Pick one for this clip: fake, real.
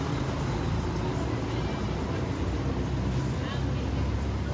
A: real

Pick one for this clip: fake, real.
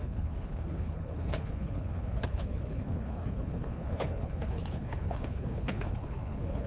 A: fake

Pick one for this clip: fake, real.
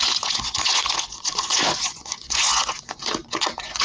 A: fake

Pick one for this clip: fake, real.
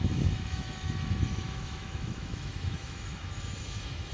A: fake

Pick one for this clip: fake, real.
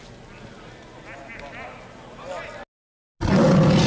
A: real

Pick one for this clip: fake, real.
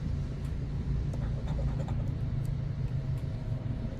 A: fake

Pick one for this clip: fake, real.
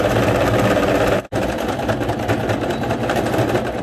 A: fake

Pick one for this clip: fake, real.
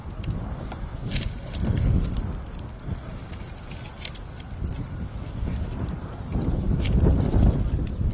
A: real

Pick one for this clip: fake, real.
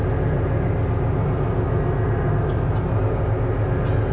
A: real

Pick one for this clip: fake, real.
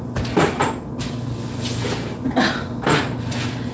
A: real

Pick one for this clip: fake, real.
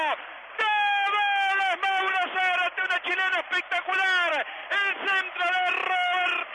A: real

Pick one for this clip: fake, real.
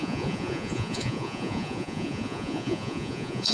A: fake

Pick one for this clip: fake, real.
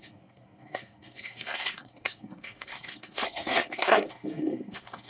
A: fake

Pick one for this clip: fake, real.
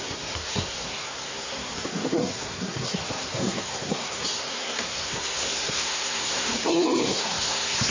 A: fake